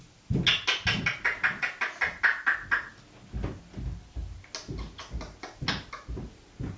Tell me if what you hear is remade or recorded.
recorded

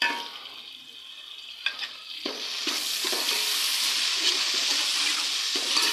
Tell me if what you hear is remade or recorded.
recorded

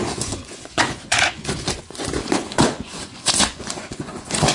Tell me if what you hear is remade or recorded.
remade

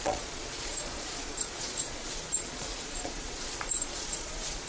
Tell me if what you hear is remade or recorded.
remade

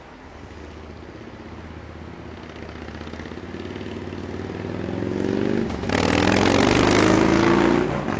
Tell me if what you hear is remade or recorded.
recorded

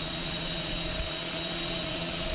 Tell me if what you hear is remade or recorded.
remade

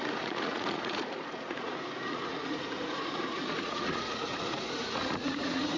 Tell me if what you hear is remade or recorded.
remade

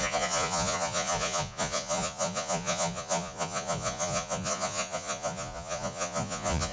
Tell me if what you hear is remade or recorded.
remade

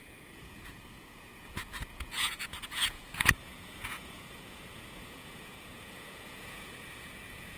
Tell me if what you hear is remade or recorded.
remade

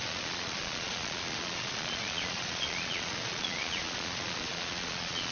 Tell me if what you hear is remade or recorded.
remade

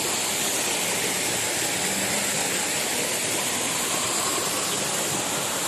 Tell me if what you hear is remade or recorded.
recorded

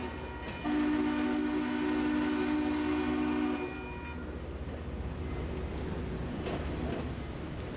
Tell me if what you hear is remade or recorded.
recorded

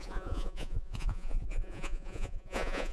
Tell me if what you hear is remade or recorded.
remade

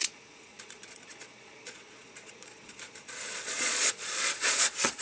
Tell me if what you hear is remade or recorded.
remade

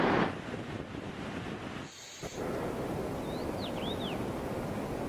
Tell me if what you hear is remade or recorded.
recorded